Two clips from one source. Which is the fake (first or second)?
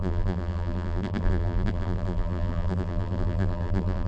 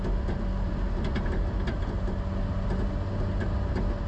first